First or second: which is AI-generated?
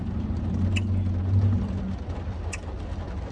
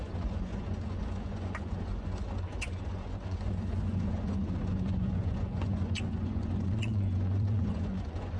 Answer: second